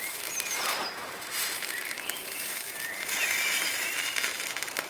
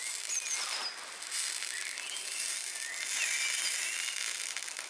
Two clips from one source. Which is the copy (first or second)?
first